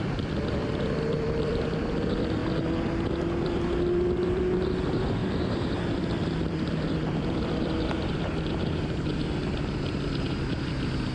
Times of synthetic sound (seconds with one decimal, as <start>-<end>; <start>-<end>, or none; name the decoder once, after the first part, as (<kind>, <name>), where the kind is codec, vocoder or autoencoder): 0.0-2.4 (vocoder, BigVGAN v2); 4.3-11.1